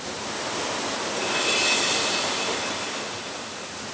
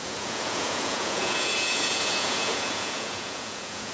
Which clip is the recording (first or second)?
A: first